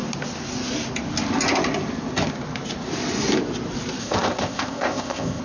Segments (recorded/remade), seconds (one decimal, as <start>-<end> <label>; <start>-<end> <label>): 0.0-4.0 recorded; 4.0-5.4 remade